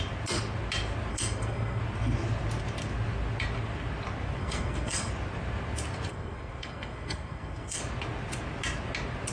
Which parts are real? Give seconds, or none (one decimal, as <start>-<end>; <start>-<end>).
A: 0.0-1.1; 1.8-4.4; 5.1-6.1; 7.8-9.3